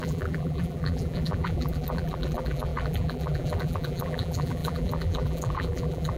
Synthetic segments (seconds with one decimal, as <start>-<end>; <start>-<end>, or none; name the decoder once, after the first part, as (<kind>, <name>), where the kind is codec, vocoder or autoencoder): 0.0-6.2 (vocoder, BigVGAN v2)